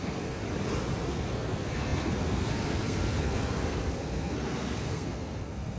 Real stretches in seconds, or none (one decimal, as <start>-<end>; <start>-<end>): 0.4-1.1